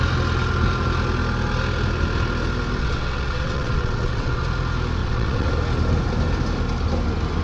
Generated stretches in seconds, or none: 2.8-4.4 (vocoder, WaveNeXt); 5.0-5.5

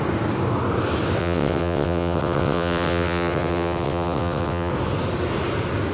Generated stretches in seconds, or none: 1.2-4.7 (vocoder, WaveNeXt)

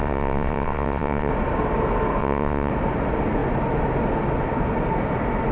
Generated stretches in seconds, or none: 0.0-1.3 (vocoder, WaveNeXt); 2.2-2.7